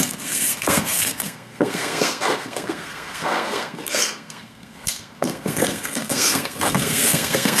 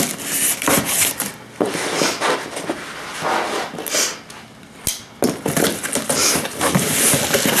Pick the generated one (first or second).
first